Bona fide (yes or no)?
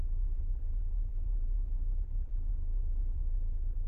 no